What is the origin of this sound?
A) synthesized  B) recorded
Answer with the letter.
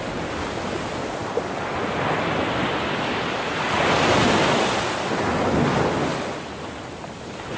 B